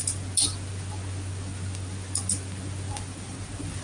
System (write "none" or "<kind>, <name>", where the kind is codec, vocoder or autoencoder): none